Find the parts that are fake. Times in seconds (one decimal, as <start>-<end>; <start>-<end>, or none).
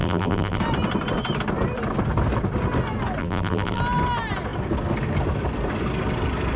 0.0-0.6; 3.2-3.8